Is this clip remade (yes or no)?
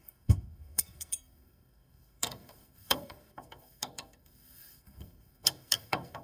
yes